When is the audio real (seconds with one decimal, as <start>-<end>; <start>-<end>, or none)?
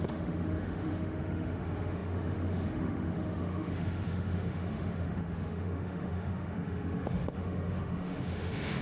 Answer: none